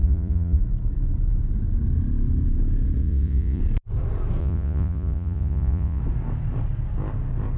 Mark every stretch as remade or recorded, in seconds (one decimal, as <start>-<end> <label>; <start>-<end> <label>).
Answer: 0.0-0.6 remade; 0.6-3.0 recorded; 3.0-3.6 remade; 3.6-4.4 recorded; 4.4-6.0 remade; 6.0-7.6 recorded